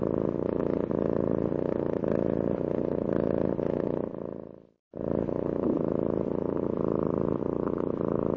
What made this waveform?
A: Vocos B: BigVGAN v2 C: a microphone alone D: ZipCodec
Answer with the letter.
C